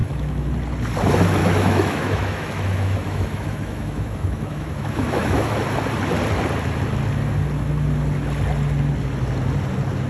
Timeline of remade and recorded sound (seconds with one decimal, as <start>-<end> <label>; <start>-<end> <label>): 0.0-0.5 remade; 0.5-1.4 recorded; 1.4-5.6 remade; 5.6-10.1 recorded